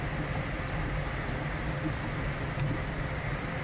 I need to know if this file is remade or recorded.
recorded